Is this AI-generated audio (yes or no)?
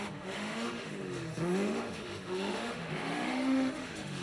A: yes